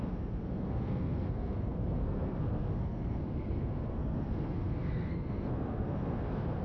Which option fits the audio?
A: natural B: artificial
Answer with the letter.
B